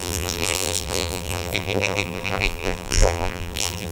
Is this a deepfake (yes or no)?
yes